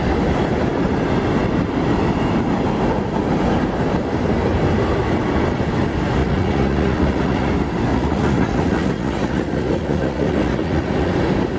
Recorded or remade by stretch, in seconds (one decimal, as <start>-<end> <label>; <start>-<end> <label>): 0.0-6.2 recorded; 6.2-7.5 remade; 7.5-7.9 recorded; 7.9-11.1 remade; 11.1-11.6 recorded